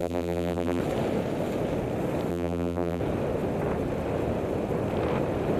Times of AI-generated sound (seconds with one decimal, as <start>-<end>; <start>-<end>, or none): 0.0-0.8; 2.3-3.0